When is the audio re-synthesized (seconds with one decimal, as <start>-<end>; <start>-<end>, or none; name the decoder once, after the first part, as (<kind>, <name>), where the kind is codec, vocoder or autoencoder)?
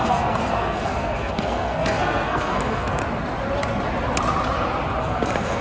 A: 0.0-3.0 (codec, SNAC); 5.0-5.6